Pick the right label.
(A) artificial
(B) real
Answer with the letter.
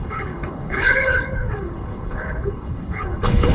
A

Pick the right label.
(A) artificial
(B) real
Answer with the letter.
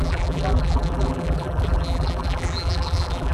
A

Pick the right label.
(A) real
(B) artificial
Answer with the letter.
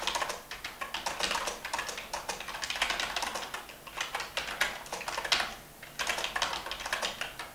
A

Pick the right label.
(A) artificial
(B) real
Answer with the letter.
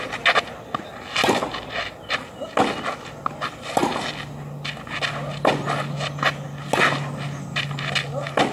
B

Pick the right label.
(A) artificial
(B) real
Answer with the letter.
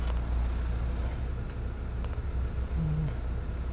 B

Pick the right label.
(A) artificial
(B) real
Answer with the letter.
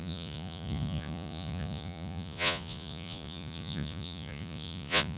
A